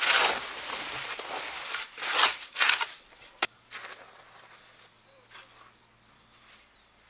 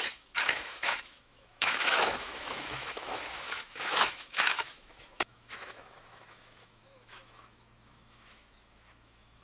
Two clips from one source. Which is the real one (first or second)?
first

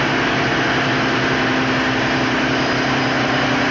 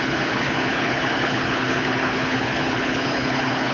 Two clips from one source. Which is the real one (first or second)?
first